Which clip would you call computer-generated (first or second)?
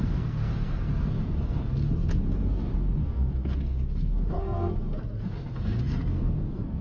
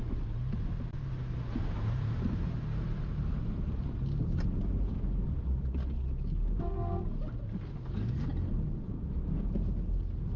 first